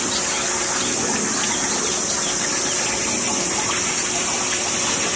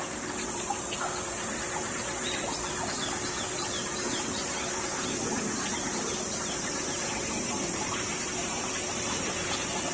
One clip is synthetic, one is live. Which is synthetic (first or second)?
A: second